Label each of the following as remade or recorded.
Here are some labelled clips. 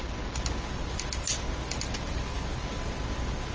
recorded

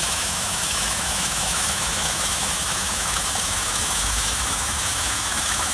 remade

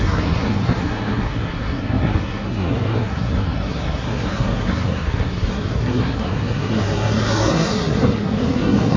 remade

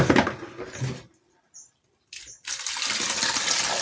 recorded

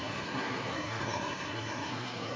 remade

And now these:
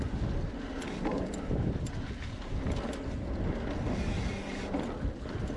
recorded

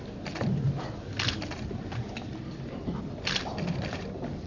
recorded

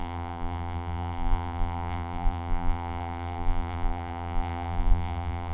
remade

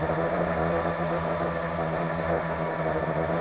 recorded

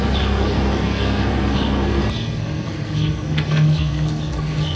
remade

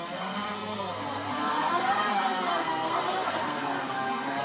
remade